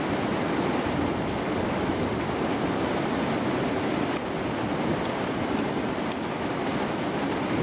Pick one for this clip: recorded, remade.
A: recorded